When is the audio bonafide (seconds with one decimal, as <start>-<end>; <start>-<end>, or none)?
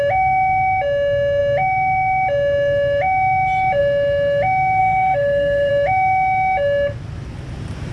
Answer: 0.0-4.8; 5.7-7.9